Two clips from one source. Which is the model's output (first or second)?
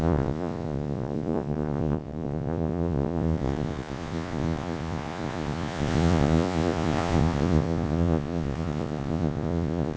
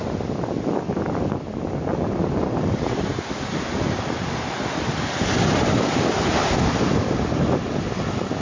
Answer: first